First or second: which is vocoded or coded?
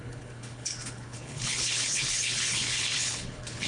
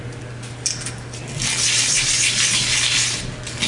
first